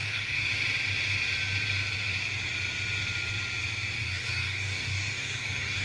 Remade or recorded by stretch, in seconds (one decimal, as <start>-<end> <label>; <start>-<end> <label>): 0.0-0.5 remade; 0.5-4.0 recorded; 4.0-5.8 remade